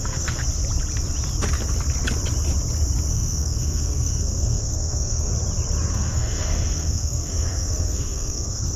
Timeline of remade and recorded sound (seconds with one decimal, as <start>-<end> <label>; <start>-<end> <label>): 0.0-0.4 remade; 0.4-3.1 recorded; 3.1-5.3 remade; 5.3-5.9 recorded; 5.9-8.8 remade